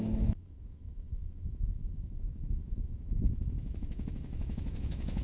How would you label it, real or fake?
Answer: fake